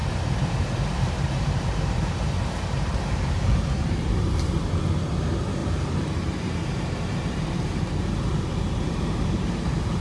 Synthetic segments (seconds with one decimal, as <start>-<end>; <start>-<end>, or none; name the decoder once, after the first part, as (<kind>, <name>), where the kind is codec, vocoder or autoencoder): 0.0-4.5 (vocoder, BigVGAN v2); 5.6-10.0